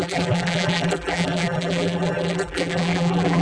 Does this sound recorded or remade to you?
remade